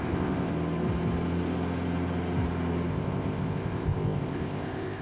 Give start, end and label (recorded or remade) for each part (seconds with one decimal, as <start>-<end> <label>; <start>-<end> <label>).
0.0-0.5 remade; 0.5-2.9 recorded; 2.9-5.0 remade